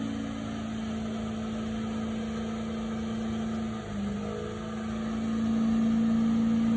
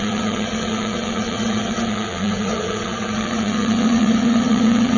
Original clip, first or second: first